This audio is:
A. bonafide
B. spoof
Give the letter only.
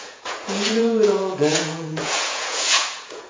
B